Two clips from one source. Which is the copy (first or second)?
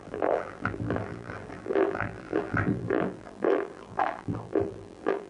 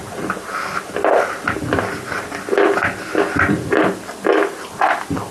first